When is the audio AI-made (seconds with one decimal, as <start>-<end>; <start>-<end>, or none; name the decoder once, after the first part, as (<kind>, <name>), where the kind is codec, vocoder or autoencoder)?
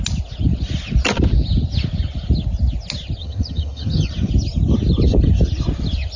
3.2-4.1 (vocoder, HiFi-GAN)